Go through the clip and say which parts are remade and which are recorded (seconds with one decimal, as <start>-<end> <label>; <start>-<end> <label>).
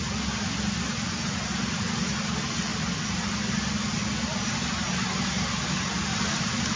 0.0-6.8 recorded